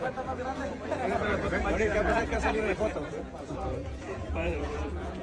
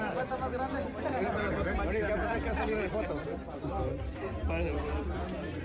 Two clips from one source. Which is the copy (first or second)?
first